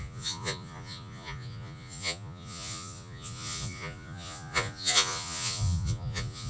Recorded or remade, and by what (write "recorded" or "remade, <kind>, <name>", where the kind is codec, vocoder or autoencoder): remade, vocoder, Vocos